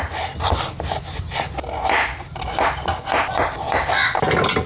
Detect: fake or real real